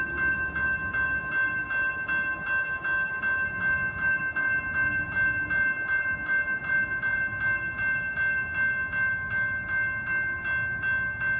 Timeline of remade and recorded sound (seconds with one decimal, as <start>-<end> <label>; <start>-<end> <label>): 0.0-11.4 recorded